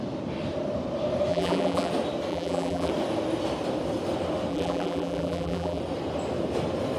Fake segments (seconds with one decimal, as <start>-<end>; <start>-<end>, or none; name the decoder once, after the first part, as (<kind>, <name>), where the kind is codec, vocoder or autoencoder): 1.3-1.9 (vocoder, BigVGAN v2); 2.3-2.9; 4.5-5.8